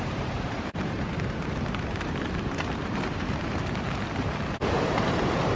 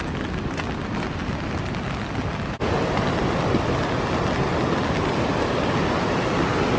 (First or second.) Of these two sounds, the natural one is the second